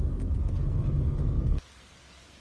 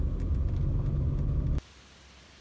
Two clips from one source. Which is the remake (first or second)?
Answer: first